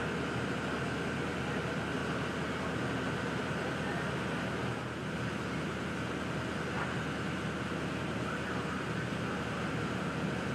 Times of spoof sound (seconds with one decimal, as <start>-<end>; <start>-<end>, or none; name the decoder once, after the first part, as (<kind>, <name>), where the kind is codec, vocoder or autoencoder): none